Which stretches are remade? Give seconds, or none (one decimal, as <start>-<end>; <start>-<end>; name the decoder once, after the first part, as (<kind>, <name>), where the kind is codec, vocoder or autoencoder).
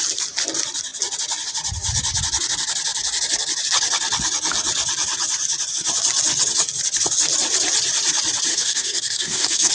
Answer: 8.5-9.7 (codec, DAC)